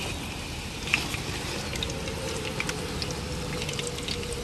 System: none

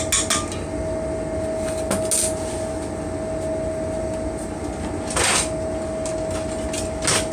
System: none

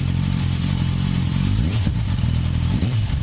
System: vocoder, BigVGAN v2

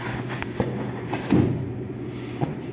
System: vocoder, Vocos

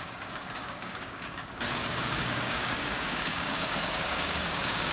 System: codec, DAC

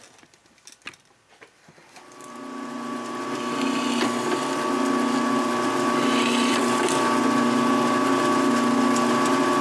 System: none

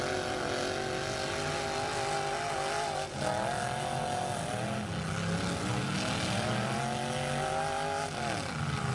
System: none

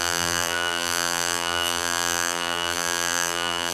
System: vocoder, BigVGAN v2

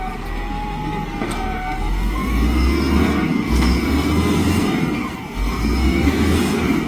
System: codec, SNAC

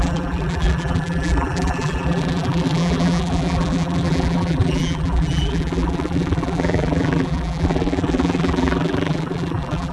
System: vocoder, BigVGAN v2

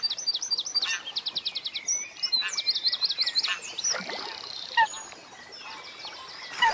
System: none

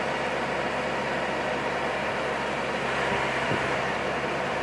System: none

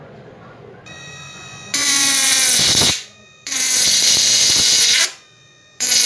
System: vocoder, Vocos